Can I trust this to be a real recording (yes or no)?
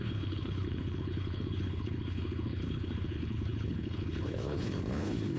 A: no